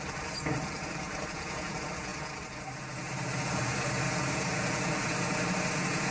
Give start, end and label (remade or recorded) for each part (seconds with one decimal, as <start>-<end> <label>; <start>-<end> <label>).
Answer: 0.0-2.1 remade; 2.1-6.1 recorded